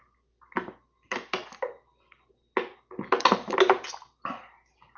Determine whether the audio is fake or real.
real